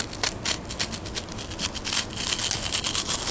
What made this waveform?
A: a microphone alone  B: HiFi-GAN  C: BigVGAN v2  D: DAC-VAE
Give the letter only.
A